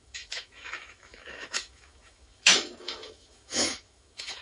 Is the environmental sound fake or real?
fake